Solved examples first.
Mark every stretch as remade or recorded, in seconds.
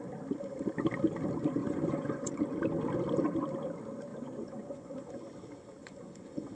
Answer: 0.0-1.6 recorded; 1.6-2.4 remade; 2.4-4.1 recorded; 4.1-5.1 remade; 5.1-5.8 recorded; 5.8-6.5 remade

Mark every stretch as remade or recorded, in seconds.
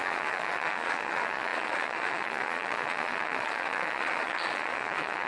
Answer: 0.0-5.3 remade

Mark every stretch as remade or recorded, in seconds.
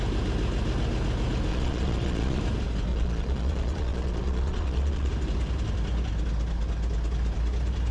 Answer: 0.0-1.5 recorded; 1.5-2.4 remade; 2.4-2.9 recorded; 2.9-5.1 remade; 5.1-7.9 recorded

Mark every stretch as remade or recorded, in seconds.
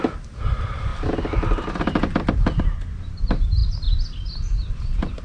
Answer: 0.0-5.2 recorded